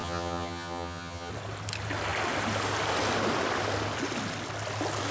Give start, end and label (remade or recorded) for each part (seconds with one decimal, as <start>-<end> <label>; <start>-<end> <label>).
0.0-1.3 remade; 1.3-5.1 recorded